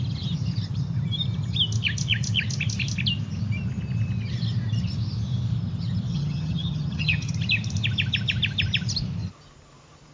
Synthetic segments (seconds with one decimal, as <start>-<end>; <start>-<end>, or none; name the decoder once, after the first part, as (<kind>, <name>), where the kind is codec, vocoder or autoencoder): 6.1-7.3 (vocoder, HiFi-GAN)